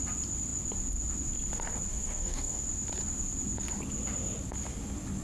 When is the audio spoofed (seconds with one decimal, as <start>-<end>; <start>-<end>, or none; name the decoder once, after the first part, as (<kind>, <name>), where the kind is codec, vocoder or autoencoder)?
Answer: 1.9-2.6 (codec, DAC)